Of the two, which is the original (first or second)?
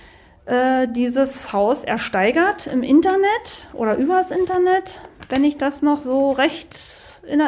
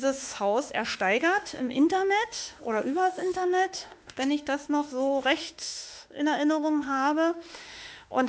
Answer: first